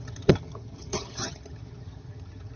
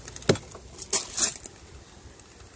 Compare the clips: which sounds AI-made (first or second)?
first